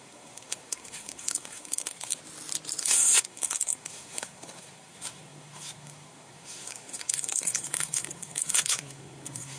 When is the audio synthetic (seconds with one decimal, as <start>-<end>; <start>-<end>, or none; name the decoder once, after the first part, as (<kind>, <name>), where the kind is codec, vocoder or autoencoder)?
0.0-2.2 (codec, SNAC); 2.8-9.6